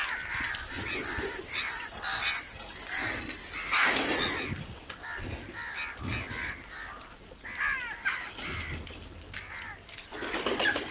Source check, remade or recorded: recorded